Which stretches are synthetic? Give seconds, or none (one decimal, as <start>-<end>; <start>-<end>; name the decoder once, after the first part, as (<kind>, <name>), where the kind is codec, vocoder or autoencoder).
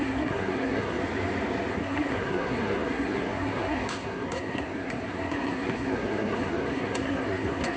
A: 0.0-1.0 (codec, SNAC); 1.7-7.8